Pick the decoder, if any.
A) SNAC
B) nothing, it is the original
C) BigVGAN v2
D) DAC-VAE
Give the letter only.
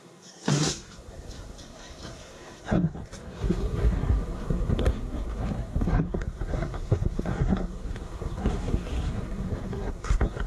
A